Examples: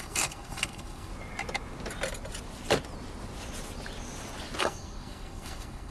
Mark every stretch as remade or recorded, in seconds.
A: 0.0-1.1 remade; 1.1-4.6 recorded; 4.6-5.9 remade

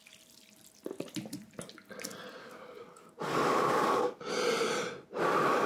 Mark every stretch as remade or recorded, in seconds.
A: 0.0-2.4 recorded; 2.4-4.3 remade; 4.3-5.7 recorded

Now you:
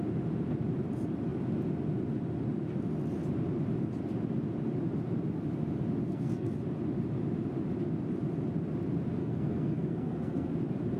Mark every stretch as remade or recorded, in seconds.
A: 0.0-6.0 recorded; 6.0-6.6 remade; 6.6-9.2 recorded; 9.2-10.5 remade; 10.5-11.0 recorded

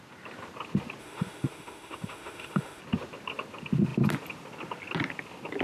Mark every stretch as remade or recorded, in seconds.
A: 0.0-1.0 recorded; 1.0-2.8 remade; 2.8-5.6 recorded

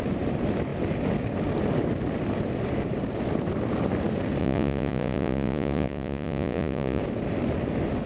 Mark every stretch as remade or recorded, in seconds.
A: 0.0-4.4 recorded; 4.4-7.0 remade; 7.0-8.1 recorded

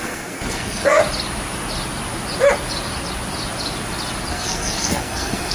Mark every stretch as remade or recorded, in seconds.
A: 0.0-1.0 remade; 1.0-4.3 recorded; 4.3-5.5 remade